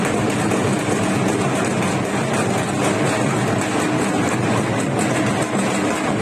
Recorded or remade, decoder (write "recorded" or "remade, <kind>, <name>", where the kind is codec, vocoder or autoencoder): recorded